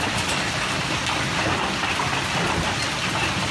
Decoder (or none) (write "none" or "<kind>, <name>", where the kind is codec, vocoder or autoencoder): none